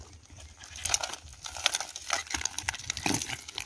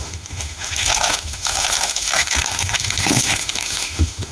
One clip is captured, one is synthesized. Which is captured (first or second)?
first